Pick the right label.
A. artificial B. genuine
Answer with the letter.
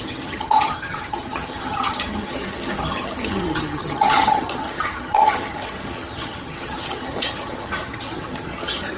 A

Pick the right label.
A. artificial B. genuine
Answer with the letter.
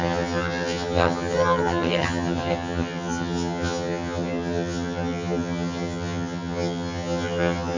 A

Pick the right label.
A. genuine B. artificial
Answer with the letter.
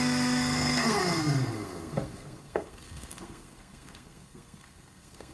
B